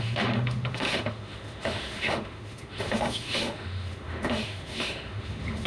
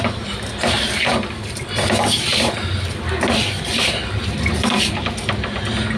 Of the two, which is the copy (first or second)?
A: first